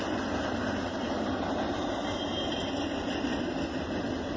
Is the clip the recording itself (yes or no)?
yes